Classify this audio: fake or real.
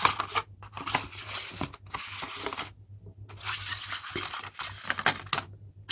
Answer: real